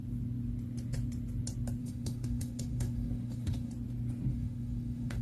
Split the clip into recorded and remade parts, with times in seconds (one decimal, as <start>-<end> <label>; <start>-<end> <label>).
0.0-1.8 recorded; 1.8-3.7 remade; 3.7-4.3 recorded; 4.3-5.2 remade